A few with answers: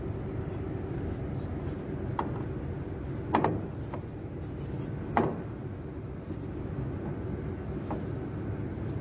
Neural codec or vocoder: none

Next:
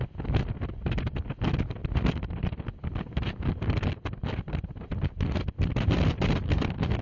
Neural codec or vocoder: none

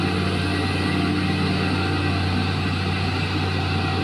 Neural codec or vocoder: none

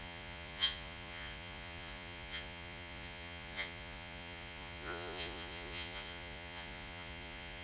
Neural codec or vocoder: vocoder, Vocos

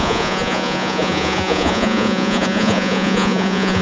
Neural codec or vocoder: vocoder, Vocos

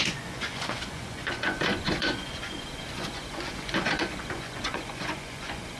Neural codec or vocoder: vocoder, Vocos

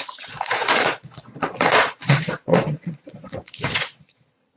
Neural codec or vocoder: vocoder, Vocos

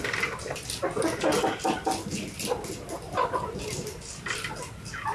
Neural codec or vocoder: none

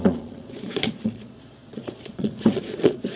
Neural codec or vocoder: vocoder, Vocos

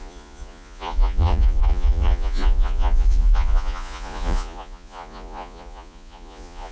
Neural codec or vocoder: vocoder, Vocos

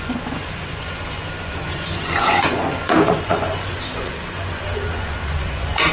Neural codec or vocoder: vocoder, Vocos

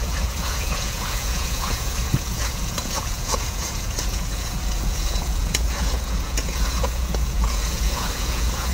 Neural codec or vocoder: vocoder, Vocos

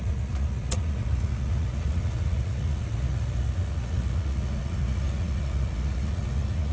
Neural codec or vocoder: vocoder, Vocos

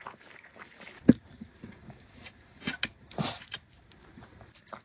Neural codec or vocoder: none